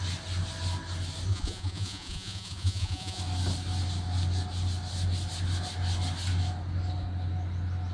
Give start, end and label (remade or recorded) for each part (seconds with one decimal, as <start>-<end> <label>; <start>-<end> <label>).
0.0-1.3 recorded; 1.3-3.2 remade; 3.2-7.9 recorded